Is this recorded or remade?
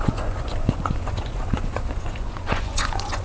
remade